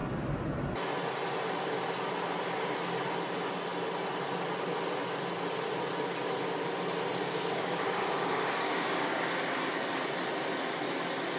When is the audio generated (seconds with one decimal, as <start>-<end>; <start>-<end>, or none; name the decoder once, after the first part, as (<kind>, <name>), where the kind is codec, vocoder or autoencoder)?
7.2-9.4 (codec, DAC)